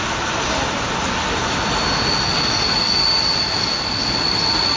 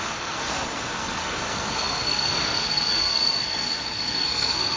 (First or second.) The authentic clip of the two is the first